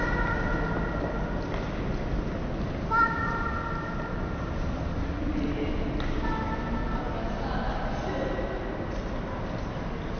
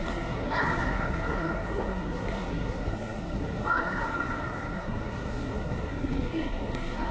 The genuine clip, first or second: first